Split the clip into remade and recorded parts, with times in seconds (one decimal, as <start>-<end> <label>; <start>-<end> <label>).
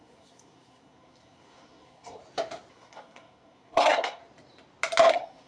0.0-2.2 remade; 2.2-2.7 recorded; 2.7-4.2 remade; 4.2-5.1 recorded; 5.1-5.5 remade